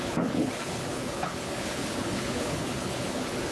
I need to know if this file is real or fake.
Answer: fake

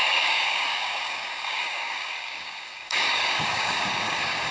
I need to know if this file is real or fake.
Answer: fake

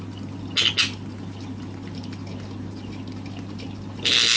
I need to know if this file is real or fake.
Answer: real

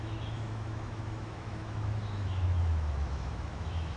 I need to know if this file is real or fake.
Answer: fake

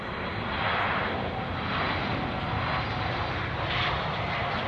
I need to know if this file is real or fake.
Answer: real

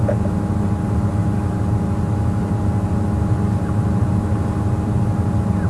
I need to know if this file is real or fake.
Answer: real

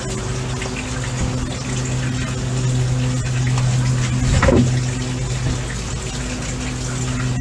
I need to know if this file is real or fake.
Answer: real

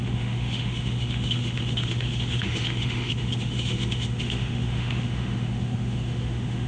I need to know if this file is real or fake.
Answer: fake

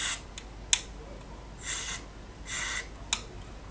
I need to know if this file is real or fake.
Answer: real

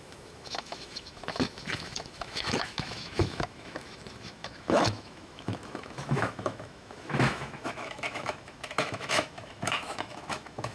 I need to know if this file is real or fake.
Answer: fake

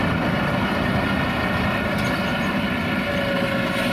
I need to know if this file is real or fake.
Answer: real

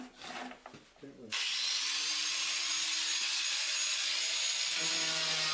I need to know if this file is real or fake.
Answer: real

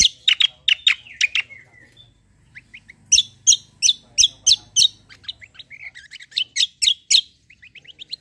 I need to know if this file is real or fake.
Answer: real